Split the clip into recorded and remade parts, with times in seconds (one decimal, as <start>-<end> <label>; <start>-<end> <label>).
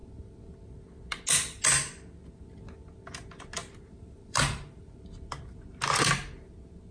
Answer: 0.0-3.6 recorded; 3.6-4.9 remade; 4.9-6.9 recorded